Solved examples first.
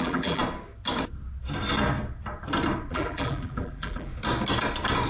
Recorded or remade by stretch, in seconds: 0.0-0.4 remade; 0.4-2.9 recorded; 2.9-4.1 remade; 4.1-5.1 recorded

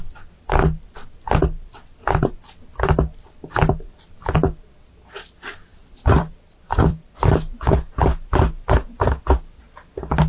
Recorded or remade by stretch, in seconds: 0.0-5.7 recorded; 5.7-7.1 remade; 7.1-10.3 recorded